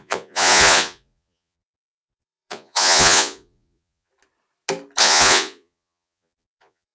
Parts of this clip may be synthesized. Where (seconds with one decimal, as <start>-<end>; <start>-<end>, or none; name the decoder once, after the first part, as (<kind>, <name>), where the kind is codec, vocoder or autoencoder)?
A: 0.0-4.1 (vocoder, Vocos); 5.0-6.9